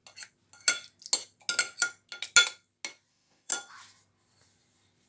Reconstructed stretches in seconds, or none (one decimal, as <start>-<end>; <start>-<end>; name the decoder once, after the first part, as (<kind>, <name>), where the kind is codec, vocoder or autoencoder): 3.1-3.5 (autoencoder, DAC-VAE)